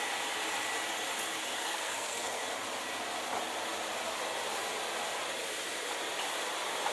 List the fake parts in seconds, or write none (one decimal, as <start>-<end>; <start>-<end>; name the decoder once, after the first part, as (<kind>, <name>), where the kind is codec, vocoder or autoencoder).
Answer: 1.3-2.4 (codec, SNAC)